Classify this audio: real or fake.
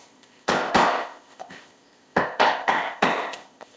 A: fake